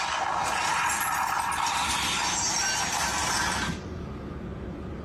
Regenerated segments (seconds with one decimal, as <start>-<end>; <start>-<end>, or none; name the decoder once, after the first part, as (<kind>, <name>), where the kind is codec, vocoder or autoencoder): none